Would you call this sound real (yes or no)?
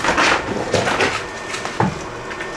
yes